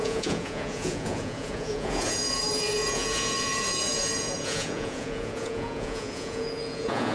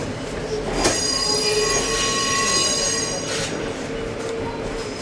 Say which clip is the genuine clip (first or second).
second